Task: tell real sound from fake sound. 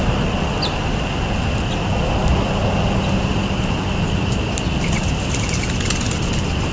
real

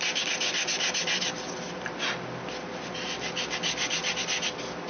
real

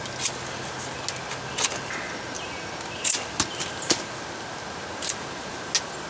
real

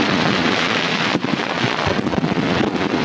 fake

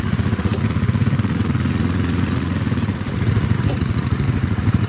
fake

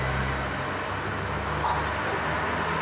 real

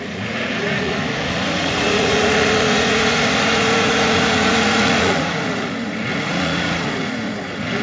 fake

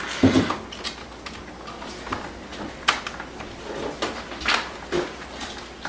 real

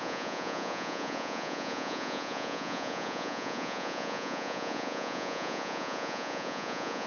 fake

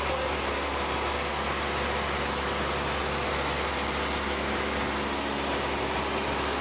real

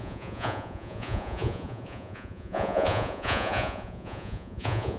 fake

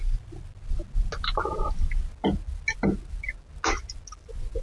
real